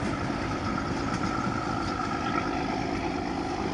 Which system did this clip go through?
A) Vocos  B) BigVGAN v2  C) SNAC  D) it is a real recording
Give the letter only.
D